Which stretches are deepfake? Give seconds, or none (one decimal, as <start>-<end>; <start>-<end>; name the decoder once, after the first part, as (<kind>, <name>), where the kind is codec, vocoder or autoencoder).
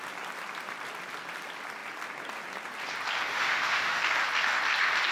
3.3-4.0 (autoencoder, DAC-VAE)